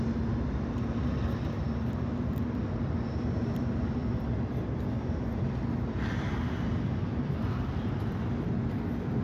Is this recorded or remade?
recorded